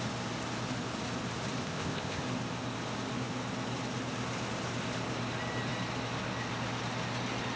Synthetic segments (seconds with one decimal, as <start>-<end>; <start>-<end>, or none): 1.6-2.2